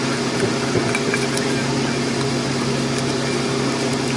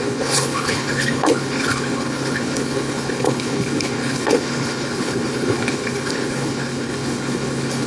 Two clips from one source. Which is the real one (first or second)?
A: first